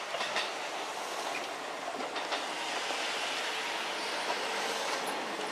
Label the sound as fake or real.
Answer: real